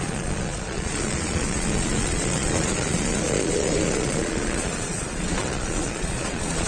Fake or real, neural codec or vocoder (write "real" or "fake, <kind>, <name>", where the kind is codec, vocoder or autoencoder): fake, vocoder, Vocos